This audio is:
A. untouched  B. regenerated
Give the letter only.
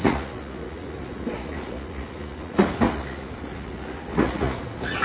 B